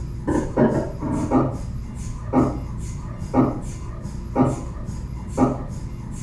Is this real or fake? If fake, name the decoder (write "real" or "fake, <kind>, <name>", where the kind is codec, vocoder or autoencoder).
real